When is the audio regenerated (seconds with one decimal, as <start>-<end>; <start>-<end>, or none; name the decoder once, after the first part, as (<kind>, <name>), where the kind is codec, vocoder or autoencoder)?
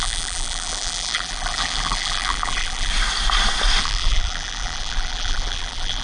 0.0-2.9 (vocoder, BigVGAN v2); 3.8-6.0